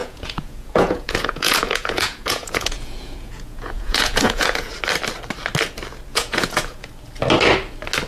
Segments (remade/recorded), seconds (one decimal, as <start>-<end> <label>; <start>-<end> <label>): 0.0-4.7 remade; 4.7-6.1 recorded; 6.1-6.9 remade; 6.9-8.1 recorded